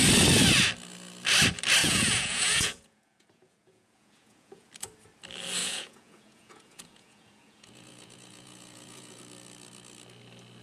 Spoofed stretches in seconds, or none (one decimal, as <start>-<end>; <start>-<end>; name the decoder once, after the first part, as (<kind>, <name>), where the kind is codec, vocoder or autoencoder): 1.8-4.7 (vocoder, Vocos); 5.6-9.2